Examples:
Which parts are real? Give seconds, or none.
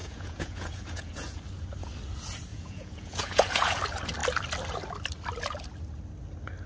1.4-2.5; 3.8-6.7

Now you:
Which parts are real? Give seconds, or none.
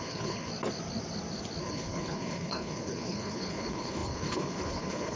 0.5-1.6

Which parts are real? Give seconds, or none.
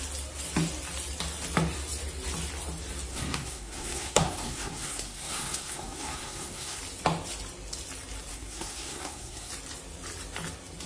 0.0-3.1; 6.8-8.3; 9.5-10.9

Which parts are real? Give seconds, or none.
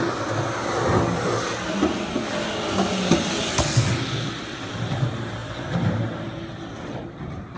0.0-7.6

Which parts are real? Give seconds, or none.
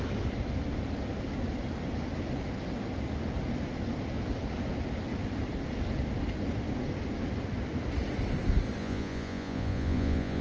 0.0-8.8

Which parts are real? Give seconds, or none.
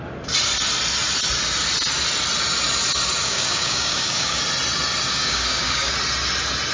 0.0-3.2; 4.4-5.1; 5.9-6.7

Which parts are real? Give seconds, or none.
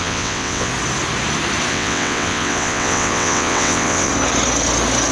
0.7-1.7; 4.1-5.1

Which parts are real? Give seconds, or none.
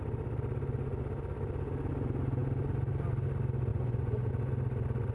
0.0-3.7; 4.3-5.1